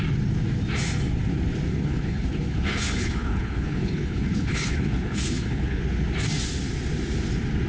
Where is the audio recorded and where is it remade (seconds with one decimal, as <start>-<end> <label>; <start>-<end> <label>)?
0.0-1.7 recorded; 1.7-5.8 remade; 5.8-7.7 recorded